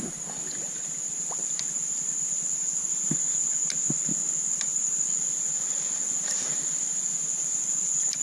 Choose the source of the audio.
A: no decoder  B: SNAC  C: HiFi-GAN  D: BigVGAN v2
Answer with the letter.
A